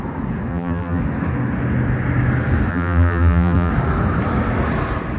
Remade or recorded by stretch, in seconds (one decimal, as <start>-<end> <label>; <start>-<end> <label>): 0.0-0.5 recorded; 0.5-1.0 remade; 1.0-2.7 recorded; 2.7-3.7 remade; 3.7-5.2 recorded